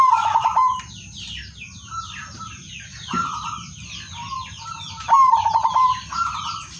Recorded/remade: recorded